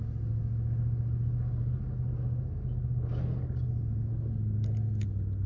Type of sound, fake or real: real